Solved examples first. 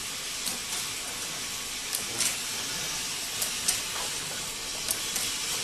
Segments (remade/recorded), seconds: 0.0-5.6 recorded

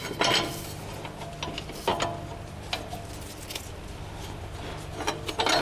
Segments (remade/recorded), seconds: 0.0-5.6 recorded

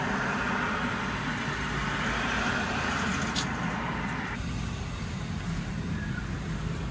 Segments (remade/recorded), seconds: 0.0-6.9 recorded

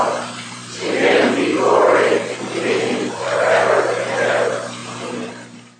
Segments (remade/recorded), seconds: 0.0-4.8 remade; 4.8-5.3 recorded; 5.3-5.8 remade